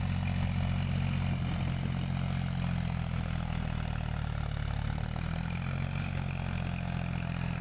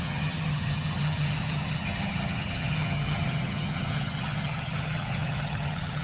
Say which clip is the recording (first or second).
first